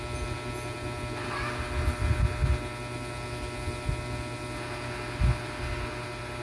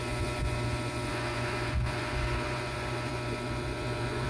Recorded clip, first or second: first